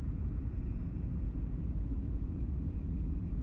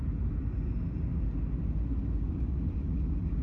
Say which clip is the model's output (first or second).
first